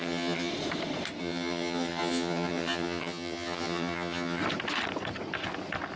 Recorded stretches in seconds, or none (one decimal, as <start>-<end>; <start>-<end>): 0.5-1.2; 4.4-6.0